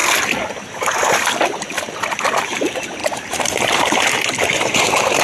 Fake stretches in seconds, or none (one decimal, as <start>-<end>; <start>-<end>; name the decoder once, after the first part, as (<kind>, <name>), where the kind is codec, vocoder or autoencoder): 0.6-1.0 (vocoder, BigVGAN v2); 2.4-5.2